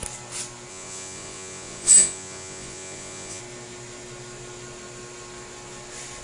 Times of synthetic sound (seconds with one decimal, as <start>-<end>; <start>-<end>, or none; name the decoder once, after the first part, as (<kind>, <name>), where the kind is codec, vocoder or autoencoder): 0.7-3.4 (vocoder, Vocos)